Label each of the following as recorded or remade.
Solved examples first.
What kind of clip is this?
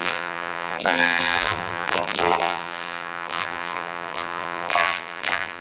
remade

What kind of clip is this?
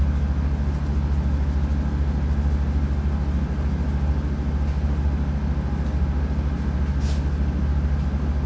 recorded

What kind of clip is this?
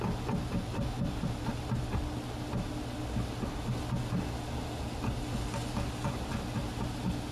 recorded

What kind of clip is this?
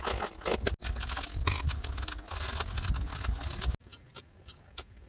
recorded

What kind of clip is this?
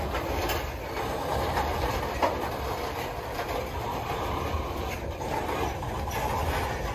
remade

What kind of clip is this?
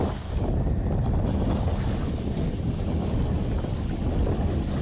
recorded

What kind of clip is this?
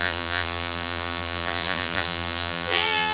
remade